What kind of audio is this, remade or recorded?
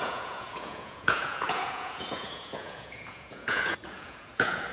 remade